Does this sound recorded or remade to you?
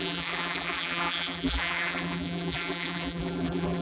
remade